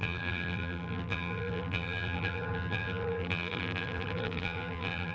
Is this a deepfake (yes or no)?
yes